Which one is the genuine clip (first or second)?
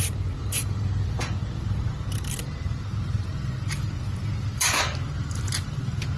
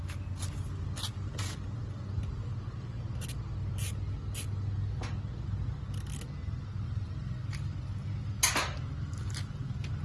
second